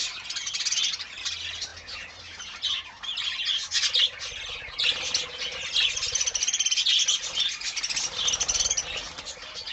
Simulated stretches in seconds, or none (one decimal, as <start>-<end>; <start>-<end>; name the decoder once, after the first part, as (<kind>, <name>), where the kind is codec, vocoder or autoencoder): none